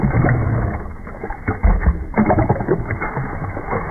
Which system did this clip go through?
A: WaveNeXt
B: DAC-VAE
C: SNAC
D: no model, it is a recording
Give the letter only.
B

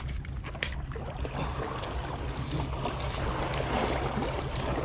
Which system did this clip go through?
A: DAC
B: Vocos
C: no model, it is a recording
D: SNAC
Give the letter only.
C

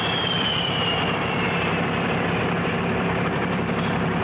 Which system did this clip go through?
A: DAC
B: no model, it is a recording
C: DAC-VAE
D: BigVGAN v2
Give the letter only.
D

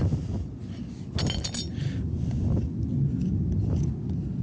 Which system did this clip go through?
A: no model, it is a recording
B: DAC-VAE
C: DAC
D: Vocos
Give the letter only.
A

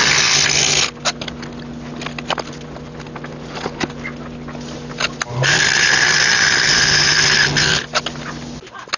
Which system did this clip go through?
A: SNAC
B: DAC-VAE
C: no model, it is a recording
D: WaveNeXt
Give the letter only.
C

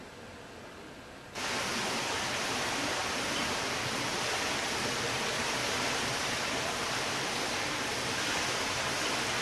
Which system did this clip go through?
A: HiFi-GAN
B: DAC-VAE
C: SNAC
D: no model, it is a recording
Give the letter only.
D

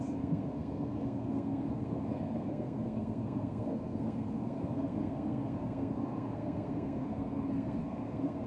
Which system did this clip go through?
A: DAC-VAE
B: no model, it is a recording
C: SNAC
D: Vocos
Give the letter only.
C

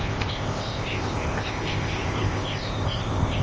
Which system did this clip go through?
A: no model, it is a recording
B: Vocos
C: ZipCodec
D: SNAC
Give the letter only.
C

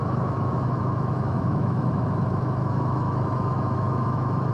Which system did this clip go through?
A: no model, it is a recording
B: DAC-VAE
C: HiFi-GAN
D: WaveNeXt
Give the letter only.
B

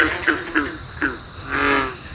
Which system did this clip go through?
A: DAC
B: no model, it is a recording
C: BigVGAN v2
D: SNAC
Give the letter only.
B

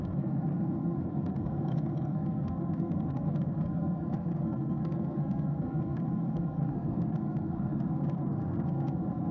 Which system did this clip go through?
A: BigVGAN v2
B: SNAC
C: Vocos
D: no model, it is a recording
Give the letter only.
B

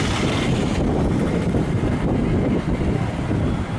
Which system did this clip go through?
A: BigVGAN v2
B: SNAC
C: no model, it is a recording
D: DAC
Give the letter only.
A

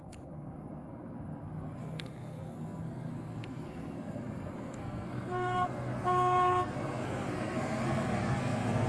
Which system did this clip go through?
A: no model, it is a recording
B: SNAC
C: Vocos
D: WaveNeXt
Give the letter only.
B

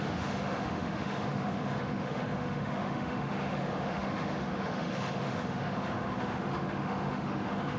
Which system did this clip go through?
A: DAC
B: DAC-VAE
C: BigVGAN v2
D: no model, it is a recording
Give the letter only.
B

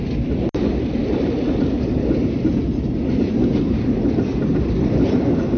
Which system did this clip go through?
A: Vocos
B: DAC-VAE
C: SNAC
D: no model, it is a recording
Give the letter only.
D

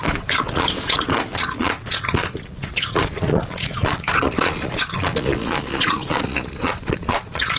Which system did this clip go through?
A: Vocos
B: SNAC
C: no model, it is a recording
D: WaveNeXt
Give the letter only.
A